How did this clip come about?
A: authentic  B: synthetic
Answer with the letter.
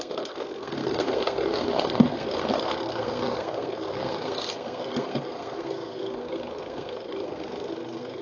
B